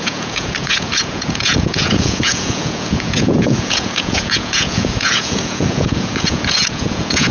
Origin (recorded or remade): remade